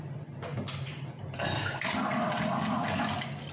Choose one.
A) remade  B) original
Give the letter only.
B